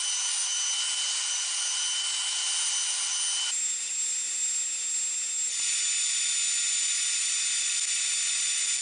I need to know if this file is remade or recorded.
recorded